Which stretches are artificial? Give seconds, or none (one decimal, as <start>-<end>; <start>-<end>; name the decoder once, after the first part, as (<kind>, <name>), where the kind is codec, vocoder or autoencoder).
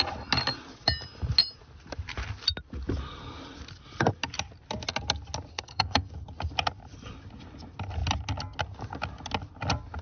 5.5-6.1 (codec, SNAC)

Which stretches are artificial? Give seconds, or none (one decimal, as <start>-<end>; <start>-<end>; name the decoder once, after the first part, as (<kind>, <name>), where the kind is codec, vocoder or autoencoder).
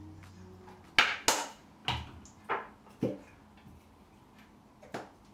none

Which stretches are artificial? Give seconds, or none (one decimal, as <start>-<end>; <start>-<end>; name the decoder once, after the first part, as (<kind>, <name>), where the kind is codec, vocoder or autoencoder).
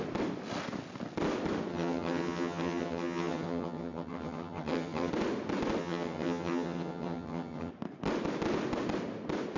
1.7-5.1 (vocoder, HiFi-GAN); 5.8-7.7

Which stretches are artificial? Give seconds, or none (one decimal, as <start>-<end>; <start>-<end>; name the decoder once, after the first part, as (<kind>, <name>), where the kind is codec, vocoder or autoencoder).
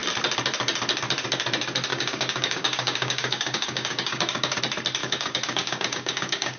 1.9-4.6 (codec, DAC); 5.0-6.6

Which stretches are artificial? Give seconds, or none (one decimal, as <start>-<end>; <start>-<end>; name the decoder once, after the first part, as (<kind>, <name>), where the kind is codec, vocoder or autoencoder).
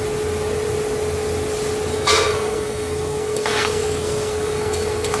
1.9-5.2 (codec, SNAC)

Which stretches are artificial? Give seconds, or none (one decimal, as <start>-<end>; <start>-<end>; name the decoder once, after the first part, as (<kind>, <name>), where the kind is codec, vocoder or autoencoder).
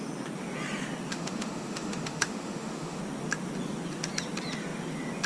1.1-3.0 (autoencoder, DAC-VAE)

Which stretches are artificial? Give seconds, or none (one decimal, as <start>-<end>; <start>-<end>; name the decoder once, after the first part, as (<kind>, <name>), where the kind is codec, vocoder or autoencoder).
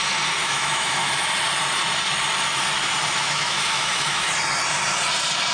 0.4-1.1 (autoencoder, DAC-VAE); 3.2-4.3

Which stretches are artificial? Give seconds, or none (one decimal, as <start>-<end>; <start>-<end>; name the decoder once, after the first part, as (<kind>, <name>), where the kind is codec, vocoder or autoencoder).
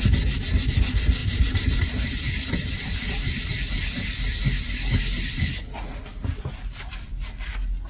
1.2-2.1 (vocoder, BigVGAN v2)